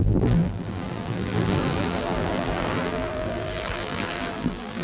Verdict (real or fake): fake